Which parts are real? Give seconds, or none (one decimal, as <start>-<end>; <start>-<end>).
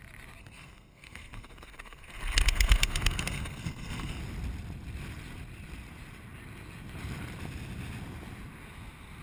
0.0-0.4; 4.2-9.2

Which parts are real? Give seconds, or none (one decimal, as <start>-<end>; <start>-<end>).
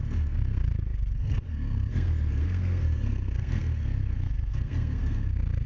none